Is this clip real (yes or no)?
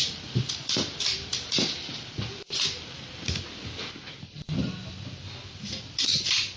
yes